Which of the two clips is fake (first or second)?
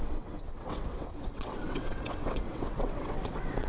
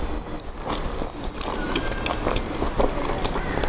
first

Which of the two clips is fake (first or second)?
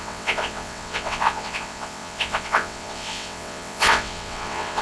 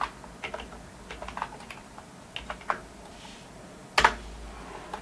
first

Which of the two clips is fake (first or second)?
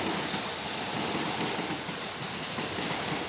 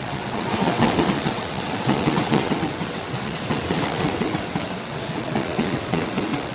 second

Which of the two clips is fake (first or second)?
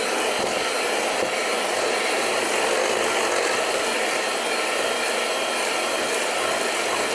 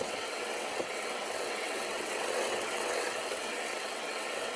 second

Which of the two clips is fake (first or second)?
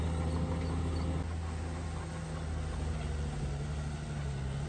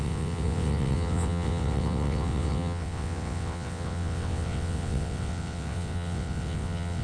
second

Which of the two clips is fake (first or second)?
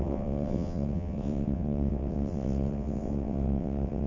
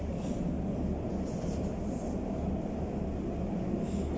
first